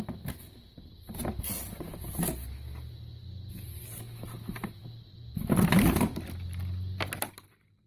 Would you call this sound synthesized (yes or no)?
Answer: no